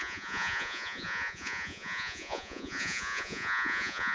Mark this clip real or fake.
fake